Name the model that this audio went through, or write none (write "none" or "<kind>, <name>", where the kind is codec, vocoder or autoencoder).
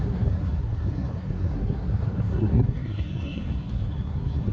codec, SNAC